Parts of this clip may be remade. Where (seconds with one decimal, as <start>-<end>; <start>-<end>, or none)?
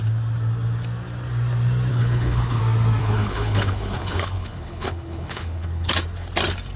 1.9-2.6; 3.0-5.9